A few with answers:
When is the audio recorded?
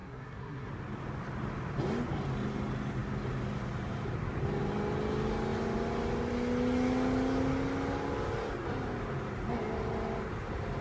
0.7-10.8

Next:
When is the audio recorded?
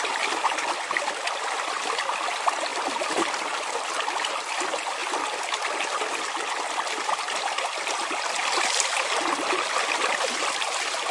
0.0-11.1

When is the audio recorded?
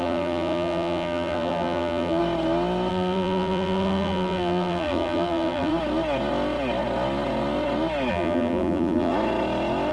2.2-2.9; 5.7-8.1; 9.1-9.9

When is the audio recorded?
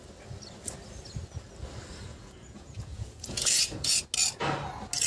0.0-2.1; 4.0-5.1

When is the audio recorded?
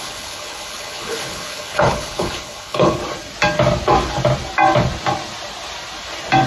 3.0-6.5